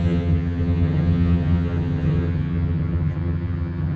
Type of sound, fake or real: fake